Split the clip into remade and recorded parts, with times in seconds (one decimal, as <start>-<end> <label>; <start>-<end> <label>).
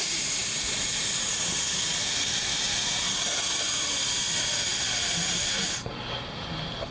0.0-0.4 recorded; 0.4-1.0 remade; 1.0-6.9 recorded